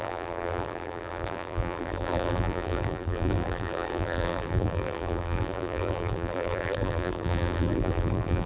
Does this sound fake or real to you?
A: fake